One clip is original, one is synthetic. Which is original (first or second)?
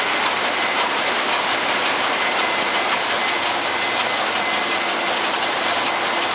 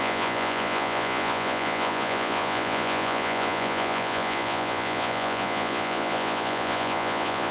first